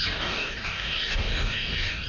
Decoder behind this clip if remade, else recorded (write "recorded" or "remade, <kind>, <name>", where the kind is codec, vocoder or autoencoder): remade, codec, DAC